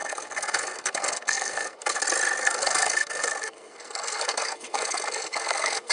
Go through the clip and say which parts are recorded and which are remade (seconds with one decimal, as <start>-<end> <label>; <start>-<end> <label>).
0.0-2.0 remade; 2.0-2.4 recorded; 2.4-5.9 remade